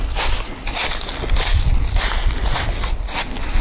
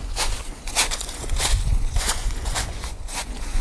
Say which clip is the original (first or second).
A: first